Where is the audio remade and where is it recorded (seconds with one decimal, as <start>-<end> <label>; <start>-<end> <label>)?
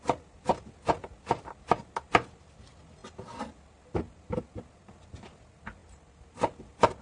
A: 0.0-7.0 recorded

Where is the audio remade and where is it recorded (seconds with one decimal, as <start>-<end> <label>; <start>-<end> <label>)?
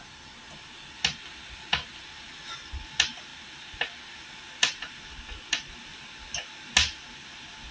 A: 0.0-7.7 recorded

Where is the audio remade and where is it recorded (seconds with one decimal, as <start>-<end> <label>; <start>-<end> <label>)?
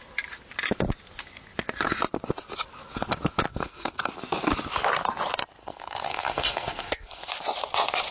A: 0.0-3.5 recorded; 3.5-4.1 remade; 4.1-5.6 recorded; 5.6-7.3 remade; 7.3-8.1 recorded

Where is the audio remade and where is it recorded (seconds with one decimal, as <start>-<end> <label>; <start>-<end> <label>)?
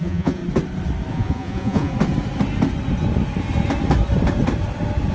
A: 0.0-0.4 remade; 0.4-1.1 recorded; 1.1-1.9 remade; 1.9-5.1 recorded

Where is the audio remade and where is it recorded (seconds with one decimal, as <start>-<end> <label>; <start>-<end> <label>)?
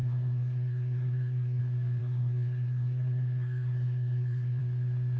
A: 0.0-1.6 remade; 1.6-2.0 recorded; 2.0-4.6 remade; 4.6-5.2 recorded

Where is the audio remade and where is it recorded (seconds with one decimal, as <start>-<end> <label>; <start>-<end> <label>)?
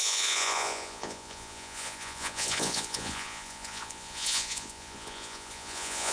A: 0.0-6.1 remade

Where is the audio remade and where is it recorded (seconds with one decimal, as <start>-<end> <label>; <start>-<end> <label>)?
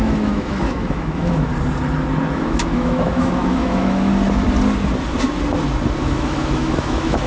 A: 0.0-1.5 remade; 1.5-2.3 recorded; 2.3-4.1 remade; 4.1-6.0 recorded; 6.0-7.3 remade